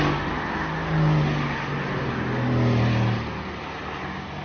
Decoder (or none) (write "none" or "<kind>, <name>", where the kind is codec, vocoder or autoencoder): none